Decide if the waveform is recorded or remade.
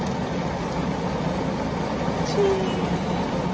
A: recorded